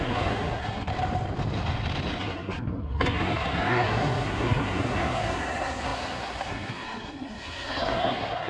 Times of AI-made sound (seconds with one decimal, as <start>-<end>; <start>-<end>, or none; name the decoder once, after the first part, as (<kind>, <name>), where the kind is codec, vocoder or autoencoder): 0.0-0.9 (codec, SNAC); 2.2-8.5